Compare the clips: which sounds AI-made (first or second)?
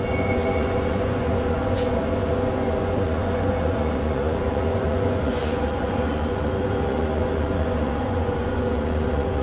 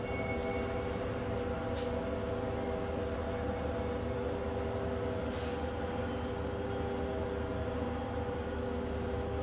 first